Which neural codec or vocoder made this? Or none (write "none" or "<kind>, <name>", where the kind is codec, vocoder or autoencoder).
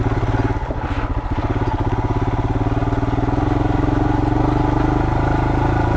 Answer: none